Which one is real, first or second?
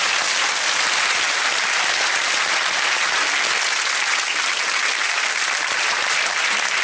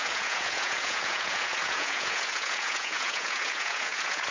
first